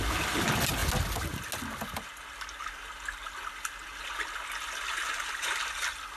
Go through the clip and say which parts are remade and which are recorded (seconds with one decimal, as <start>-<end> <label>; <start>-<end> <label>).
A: 0.0-6.2 recorded